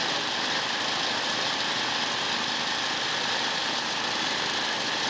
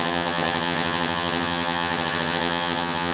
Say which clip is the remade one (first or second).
second